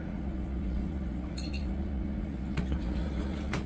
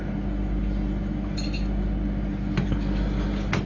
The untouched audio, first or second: second